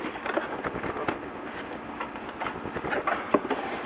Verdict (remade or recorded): recorded